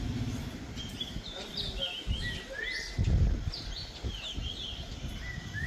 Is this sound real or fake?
real